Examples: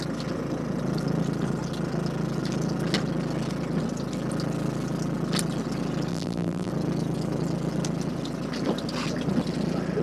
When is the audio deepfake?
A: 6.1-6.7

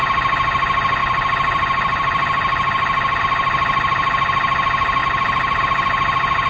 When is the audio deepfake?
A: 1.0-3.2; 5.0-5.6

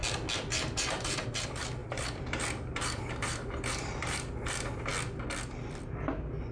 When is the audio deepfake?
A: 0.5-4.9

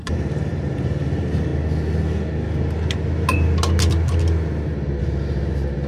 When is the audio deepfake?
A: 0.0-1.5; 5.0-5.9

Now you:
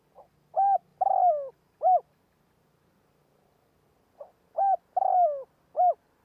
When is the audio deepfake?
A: none

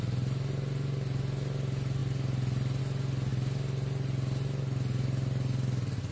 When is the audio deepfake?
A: none

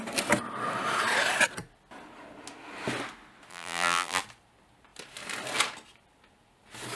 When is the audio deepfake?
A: 3.5-4.2